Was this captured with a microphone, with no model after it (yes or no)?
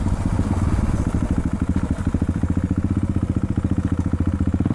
yes